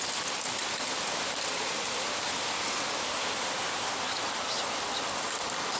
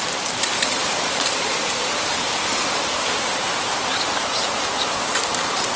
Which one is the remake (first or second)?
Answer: second